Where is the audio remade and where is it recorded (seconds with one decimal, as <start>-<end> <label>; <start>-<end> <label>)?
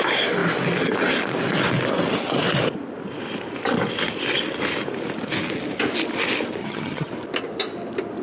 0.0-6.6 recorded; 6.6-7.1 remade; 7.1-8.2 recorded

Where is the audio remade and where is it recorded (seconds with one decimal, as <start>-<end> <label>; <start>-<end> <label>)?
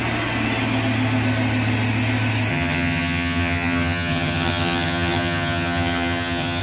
0.0-2.5 recorded; 2.5-6.6 remade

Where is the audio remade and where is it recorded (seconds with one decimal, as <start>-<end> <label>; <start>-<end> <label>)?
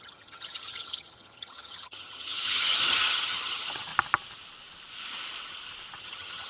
0.0-3.9 remade; 3.9-6.0 recorded; 6.0-6.5 remade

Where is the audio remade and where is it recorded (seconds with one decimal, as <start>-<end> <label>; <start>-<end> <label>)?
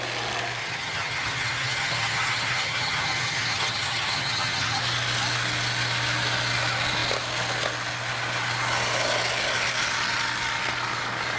0.0-0.6 recorded; 0.6-4.8 remade; 4.8-11.4 recorded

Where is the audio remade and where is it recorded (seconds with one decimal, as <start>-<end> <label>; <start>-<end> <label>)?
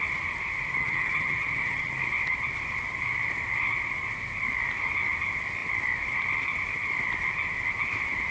0.0-0.8 recorded; 0.8-1.9 remade; 1.9-8.3 recorded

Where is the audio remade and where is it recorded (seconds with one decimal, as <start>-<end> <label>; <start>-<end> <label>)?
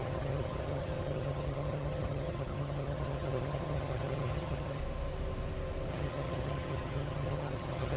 0.0-4.8 remade; 4.8-5.9 recorded; 5.9-8.0 remade